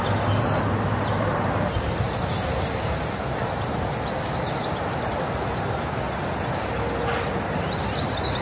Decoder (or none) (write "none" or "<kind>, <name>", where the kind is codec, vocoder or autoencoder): none